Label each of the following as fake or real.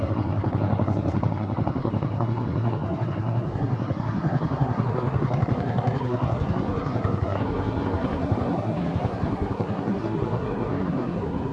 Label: fake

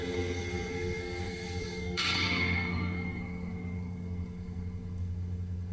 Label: fake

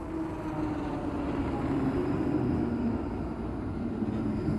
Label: real